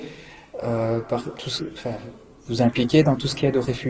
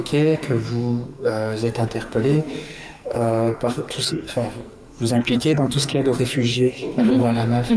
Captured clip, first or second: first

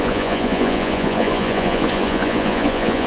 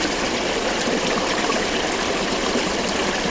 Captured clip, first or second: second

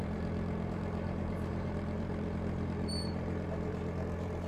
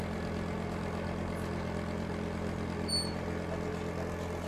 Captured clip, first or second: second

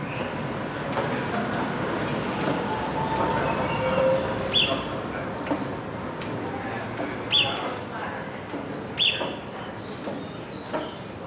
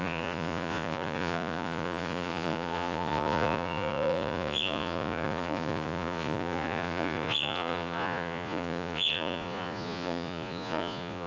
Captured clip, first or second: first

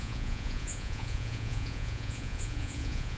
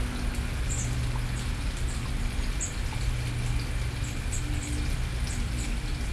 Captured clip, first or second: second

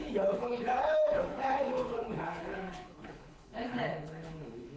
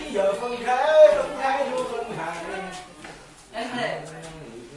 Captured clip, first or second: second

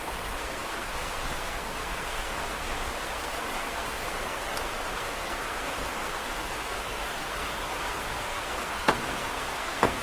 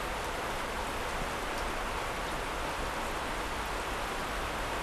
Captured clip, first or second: second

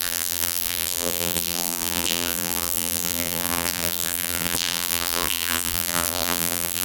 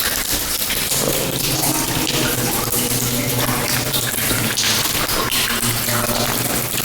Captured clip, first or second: second